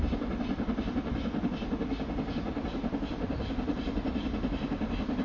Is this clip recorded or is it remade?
recorded